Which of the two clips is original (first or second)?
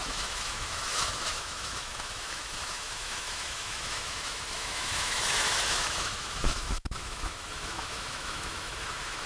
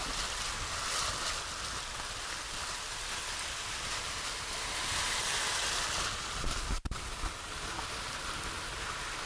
second